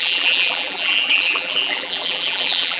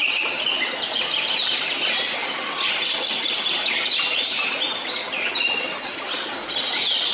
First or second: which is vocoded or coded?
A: first